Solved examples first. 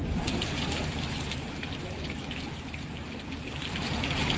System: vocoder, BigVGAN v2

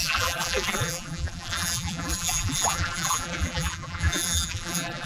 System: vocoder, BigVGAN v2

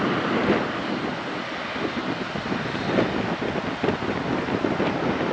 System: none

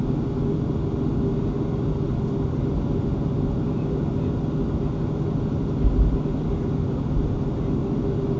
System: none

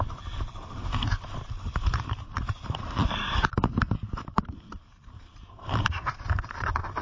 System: vocoder, BigVGAN v2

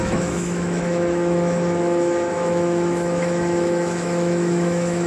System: autoencoder, DAC-VAE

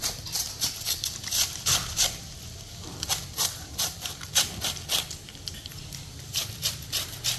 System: vocoder, BigVGAN v2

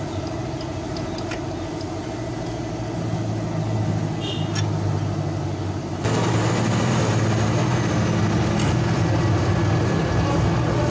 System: none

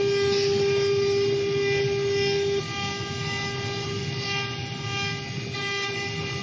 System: none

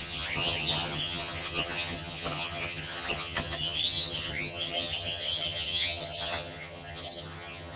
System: vocoder, HiFi-GAN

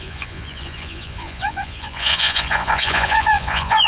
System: vocoder, Vocos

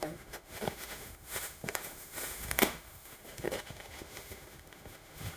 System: autoencoder, DAC-VAE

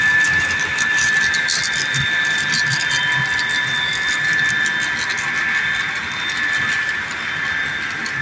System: none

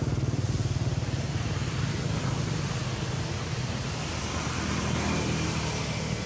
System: vocoder, BigVGAN v2